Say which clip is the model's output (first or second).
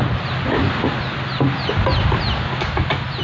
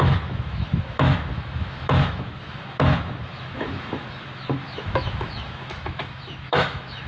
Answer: second